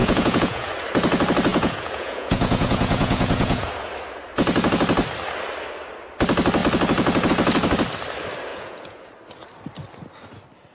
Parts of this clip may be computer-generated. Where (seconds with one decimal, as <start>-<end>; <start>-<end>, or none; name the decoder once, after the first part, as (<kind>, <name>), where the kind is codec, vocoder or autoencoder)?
0.0-0.7 (vocoder, Vocos); 1.5-3.7; 8.5-9.1